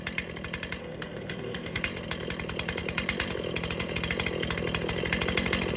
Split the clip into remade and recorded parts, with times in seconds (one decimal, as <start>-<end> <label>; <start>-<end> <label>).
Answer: 0.0-0.8 recorded; 0.8-1.8 remade; 1.8-5.8 recorded